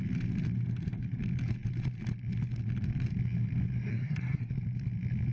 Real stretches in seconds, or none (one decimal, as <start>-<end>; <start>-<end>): 0.0-3.9; 4.5-5.3